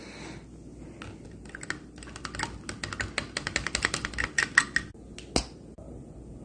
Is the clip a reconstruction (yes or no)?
no